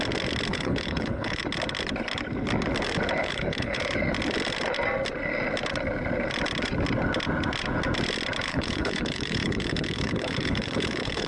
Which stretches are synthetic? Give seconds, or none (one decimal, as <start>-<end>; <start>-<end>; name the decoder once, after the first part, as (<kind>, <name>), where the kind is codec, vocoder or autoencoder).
0.5-1.4 (codec, HILCodec); 3.2-3.8; 8.5-11.3